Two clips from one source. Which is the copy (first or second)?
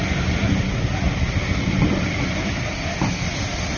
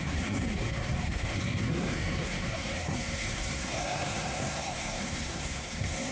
second